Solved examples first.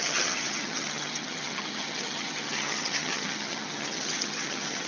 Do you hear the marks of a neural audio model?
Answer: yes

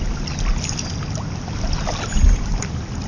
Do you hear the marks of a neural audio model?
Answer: no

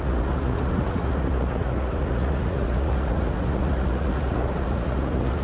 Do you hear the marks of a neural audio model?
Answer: yes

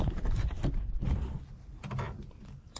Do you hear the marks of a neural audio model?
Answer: no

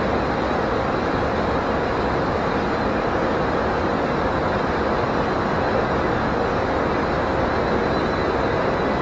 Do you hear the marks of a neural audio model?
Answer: no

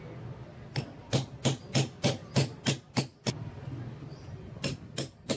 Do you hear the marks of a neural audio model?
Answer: no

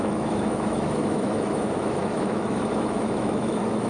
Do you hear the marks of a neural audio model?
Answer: yes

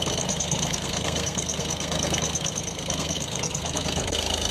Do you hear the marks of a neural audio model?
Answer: yes